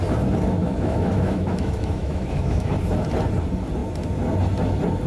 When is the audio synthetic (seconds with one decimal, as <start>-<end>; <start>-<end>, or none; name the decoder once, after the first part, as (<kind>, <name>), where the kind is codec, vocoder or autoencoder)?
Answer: 0.6-2.7 (autoencoder, DAC-VAE)